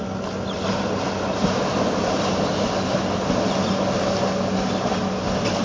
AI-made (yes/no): no